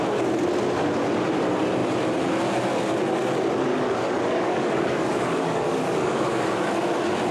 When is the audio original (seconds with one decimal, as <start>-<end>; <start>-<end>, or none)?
0.0-3.7; 6.7-7.3